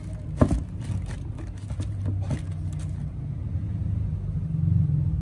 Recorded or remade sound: recorded